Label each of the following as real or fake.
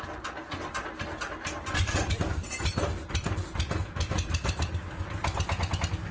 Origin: real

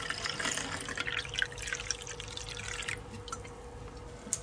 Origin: real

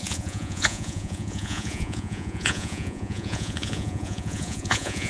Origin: fake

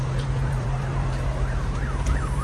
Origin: fake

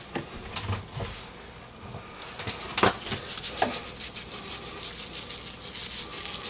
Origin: real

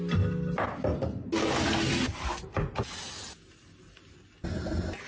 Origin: real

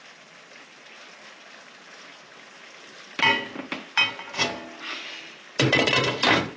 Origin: real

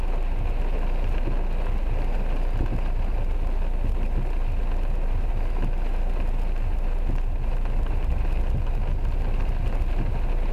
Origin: real